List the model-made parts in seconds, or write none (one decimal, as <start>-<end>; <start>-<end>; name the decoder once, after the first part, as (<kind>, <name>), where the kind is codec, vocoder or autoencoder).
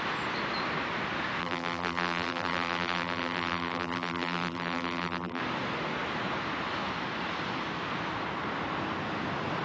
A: 1.4-5.4 (vocoder, BigVGAN v2)